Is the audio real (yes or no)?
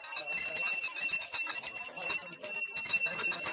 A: no